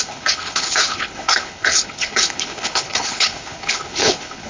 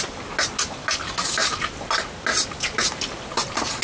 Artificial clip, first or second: first